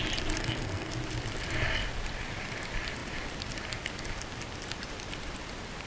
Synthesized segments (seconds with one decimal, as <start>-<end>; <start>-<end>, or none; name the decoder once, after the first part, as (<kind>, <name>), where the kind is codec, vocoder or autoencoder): 0.4-0.9 (codec, SNAC)